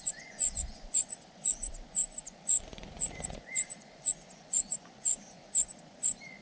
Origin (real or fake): fake